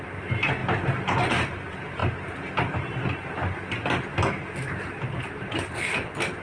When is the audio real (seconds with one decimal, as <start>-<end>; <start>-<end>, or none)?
0.0-6.4